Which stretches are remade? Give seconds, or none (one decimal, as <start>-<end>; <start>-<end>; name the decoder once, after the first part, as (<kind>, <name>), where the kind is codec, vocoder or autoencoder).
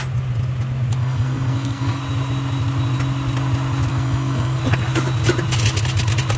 1.0-2.0 (codec, SNAC); 3.9-4.6